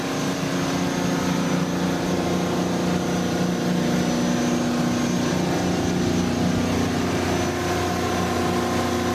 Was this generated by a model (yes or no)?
no